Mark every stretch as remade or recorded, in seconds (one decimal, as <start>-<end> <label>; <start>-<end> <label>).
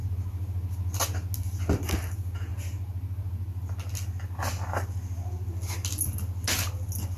0.0-7.2 recorded